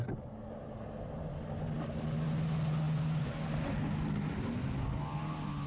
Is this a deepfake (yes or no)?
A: no